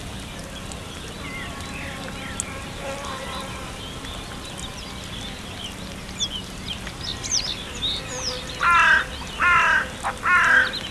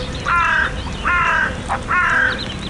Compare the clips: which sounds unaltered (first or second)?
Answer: first